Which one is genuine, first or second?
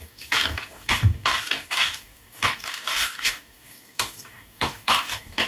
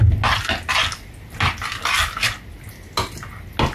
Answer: second